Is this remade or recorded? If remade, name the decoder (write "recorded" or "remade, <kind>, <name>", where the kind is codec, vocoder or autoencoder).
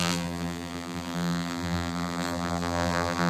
remade, vocoder, BigVGAN v2